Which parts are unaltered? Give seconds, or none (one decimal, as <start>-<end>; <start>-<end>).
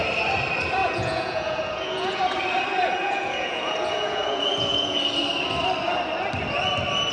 0.0-0.8; 2.2-3.0; 5.0-7.1